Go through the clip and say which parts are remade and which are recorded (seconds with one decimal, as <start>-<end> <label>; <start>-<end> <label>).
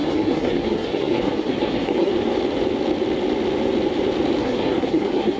0.0-2.1 remade; 2.1-4.4 recorded; 4.4-5.4 remade